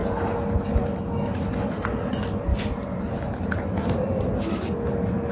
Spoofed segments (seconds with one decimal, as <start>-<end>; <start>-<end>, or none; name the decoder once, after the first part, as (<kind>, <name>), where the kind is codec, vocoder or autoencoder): none